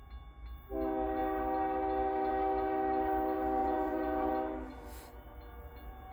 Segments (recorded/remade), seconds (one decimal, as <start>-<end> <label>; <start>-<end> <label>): 0.0-3.6 recorded; 3.6-4.3 remade; 4.3-6.1 recorded